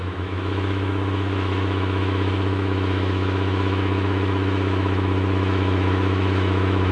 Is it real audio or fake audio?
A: fake